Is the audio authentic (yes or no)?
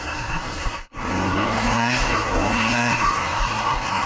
no